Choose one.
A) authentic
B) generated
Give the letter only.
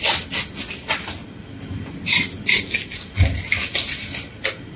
A